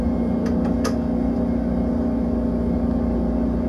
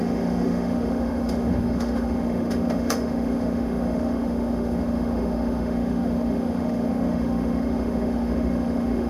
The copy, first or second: second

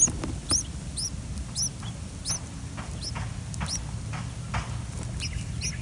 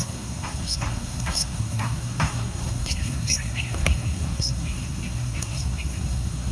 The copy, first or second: second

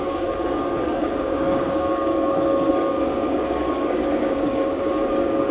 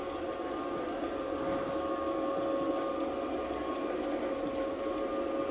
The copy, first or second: first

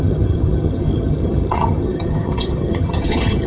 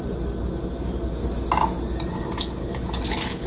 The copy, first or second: first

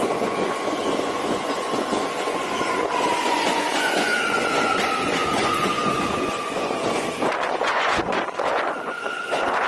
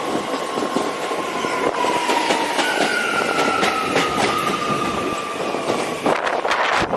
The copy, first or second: first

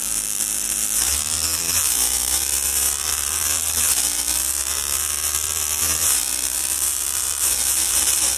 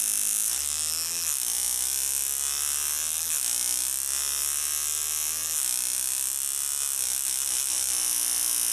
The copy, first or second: first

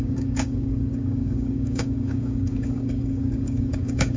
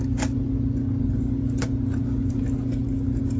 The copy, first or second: first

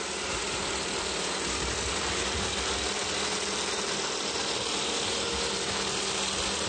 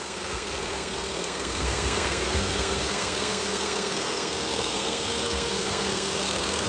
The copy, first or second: second